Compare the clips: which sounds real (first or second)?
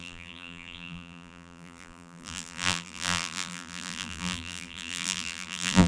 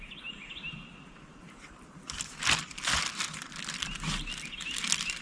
second